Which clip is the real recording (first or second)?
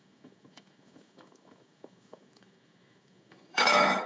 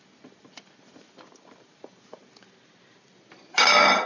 second